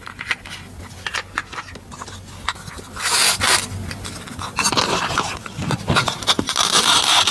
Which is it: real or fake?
real